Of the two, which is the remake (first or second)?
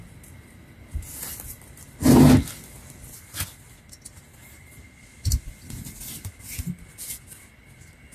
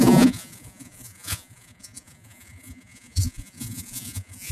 second